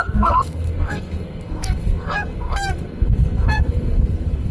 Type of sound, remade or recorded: remade